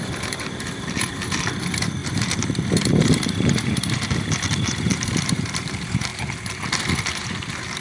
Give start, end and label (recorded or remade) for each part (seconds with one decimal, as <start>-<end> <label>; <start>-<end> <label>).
0.0-6.1 remade; 6.1-7.1 recorded; 7.1-7.8 remade